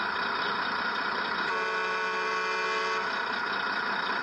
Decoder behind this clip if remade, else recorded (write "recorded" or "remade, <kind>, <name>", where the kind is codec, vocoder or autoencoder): recorded